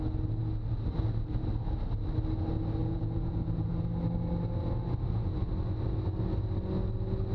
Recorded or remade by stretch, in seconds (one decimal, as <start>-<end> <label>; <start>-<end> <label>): 0.0-2.8 recorded; 2.8-3.7 remade; 3.7-7.3 recorded